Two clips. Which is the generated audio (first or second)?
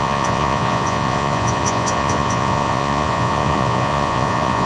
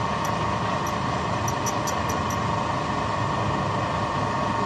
first